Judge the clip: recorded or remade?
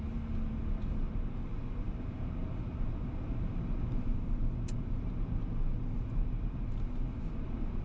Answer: recorded